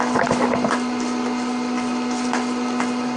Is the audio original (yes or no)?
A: yes